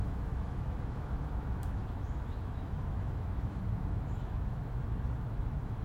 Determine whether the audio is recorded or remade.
remade